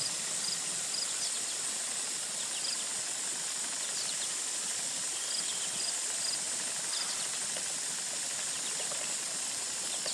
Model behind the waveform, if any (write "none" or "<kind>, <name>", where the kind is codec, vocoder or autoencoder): none